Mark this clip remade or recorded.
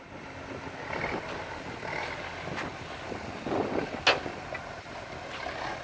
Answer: recorded